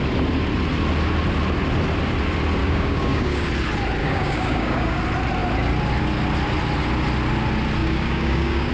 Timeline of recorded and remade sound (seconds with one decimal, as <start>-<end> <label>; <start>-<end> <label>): 0.0-2.6 recorded; 2.6-3.5 remade; 3.5-4.0 recorded; 4.0-5.0 remade; 5.0-7.8 recorded; 7.8-8.7 remade